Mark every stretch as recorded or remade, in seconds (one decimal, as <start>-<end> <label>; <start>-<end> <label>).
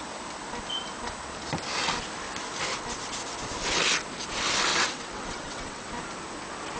0.0-4.7 recorded; 4.7-5.9 remade; 5.9-6.8 recorded